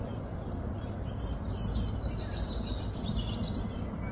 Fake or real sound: real